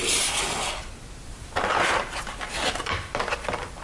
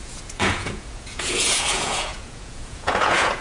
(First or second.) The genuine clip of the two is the first